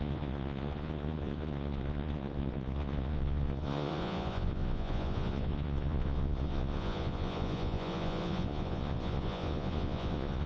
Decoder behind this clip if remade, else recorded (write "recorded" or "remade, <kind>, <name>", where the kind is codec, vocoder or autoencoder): remade, vocoder, Vocos